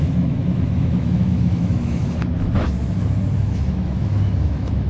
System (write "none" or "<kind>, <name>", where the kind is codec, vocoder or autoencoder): autoencoder, DAC-VAE